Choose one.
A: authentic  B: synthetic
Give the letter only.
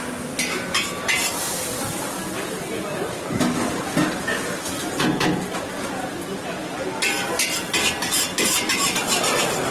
A